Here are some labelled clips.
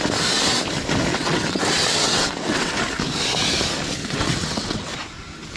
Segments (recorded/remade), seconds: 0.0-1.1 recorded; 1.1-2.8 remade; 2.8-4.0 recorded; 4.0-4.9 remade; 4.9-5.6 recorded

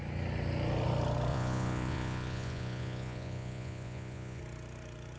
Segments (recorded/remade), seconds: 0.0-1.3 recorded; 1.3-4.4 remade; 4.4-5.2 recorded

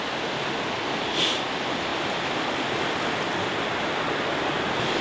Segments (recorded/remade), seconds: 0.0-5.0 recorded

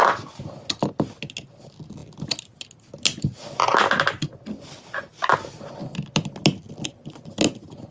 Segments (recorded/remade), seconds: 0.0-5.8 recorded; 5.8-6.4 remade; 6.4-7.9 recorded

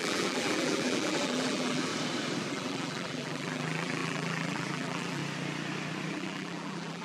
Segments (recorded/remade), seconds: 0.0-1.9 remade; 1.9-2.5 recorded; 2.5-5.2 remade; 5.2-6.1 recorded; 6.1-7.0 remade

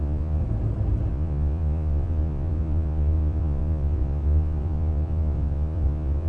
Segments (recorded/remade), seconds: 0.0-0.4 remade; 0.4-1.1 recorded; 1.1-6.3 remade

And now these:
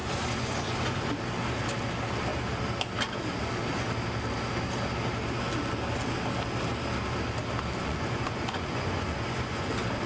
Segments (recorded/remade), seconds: 0.0-1.1 remade; 1.1-7.8 recorded; 7.8-9.7 remade; 9.7-10.1 recorded